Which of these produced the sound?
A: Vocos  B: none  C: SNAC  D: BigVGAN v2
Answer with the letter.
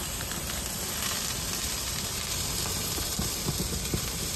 D